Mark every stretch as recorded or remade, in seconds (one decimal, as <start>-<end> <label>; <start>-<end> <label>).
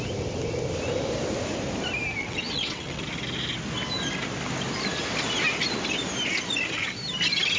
0.0-2.2 recorded; 2.2-3.0 remade; 3.0-7.6 recorded